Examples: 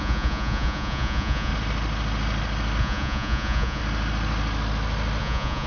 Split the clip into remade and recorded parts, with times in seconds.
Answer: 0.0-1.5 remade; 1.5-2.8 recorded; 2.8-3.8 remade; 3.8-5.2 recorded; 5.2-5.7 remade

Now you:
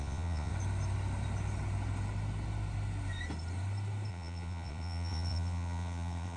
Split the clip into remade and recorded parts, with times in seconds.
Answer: 0.0-0.5 remade; 0.5-4.1 recorded; 4.1-6.4 remade

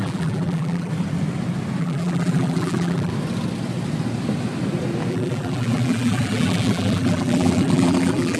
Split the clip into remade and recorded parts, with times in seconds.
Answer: 0.0-0.9 remade; 0.9-1.8 recorded; 1.8-3.1 remade; 3.1-5.1 recorded; 5.1-8.4 remade

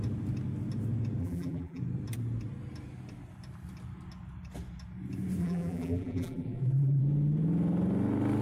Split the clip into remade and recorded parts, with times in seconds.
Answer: 0.0-1.2 recorded; 1.2-1.8 remade; 1.8-5.4 recorded; 5.4-7.0 remade; 7.0-8.4 recorded

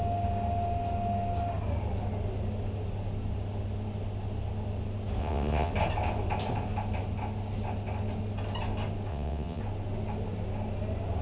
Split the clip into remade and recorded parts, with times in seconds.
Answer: 0.0-5.2 recorded; 5.2-5.7 remade; 5.7-9.1 recorded; 9.1-9.6 remade; 9.6-11.2 recorded